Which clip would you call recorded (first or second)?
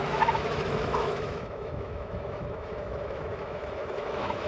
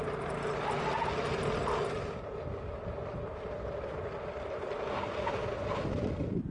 second